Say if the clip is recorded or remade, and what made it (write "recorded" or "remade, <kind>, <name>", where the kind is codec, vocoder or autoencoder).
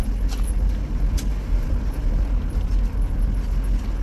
recorded